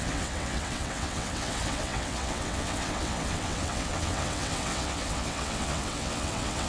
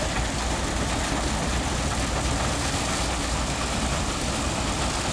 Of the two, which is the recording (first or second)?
second